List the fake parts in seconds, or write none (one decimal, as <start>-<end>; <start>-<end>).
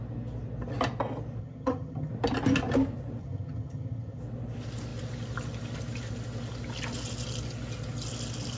1.4-2.1; 3.2-4.2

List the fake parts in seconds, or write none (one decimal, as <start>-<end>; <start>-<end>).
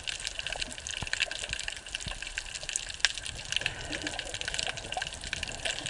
none